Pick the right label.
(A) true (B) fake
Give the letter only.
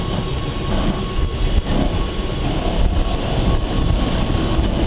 A